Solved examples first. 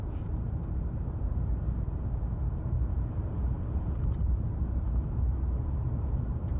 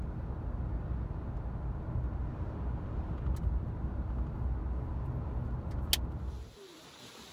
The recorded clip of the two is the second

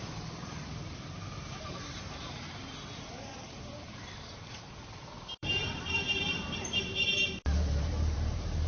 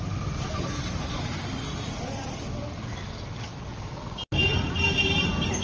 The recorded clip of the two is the second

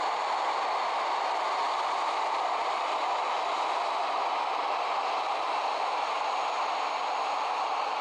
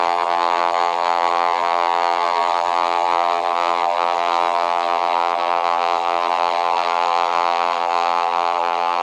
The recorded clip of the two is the first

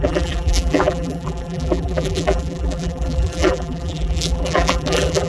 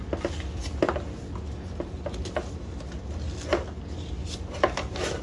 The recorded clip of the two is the second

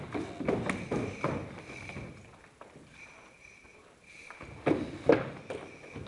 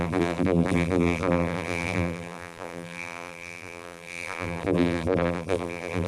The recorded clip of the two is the first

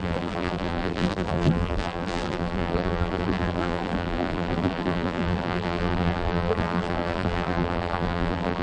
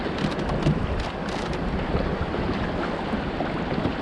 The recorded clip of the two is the second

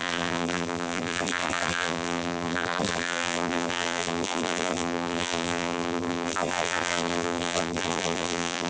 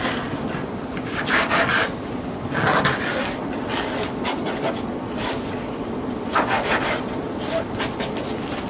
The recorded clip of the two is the second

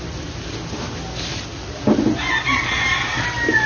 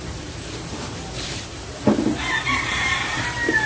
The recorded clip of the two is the first